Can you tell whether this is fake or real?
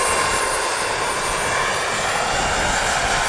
real